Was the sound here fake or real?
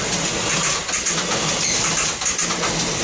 real